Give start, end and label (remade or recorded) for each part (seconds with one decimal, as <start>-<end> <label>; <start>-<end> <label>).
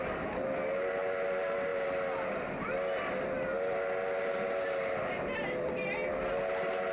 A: 0.0-6.9 recorded